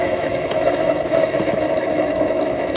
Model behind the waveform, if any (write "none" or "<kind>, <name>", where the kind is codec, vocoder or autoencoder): autoencoder, DAC-VAE